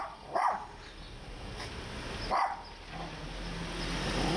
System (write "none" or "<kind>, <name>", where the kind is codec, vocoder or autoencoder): none